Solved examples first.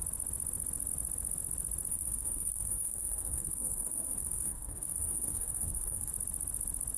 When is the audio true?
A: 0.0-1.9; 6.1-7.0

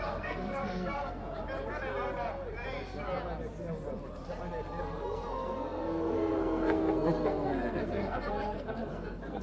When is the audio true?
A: 1.2-4.8

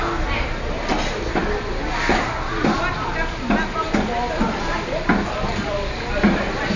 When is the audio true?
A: 0.0-6.8

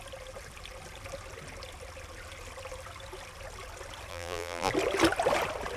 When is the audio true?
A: 0.0-4.1; 4.7-5.8